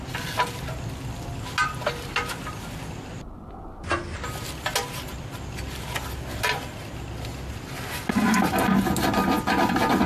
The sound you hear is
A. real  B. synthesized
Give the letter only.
A